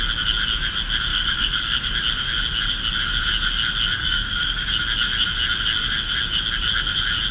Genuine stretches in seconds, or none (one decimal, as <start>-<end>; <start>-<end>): 0.0-1.1; 1.9-4.0; 4.7-7.3